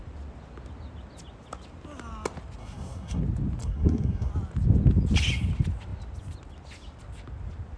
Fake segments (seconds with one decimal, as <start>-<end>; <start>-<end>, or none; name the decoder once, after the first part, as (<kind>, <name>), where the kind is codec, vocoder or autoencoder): 2.6-3.2 (codec, SNAC); 3.6-4.3